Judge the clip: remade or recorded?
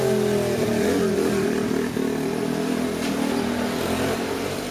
recorded